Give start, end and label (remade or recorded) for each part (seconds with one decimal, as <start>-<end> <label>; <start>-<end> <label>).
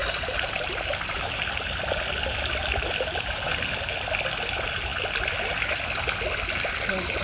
0.0-7.2 recorded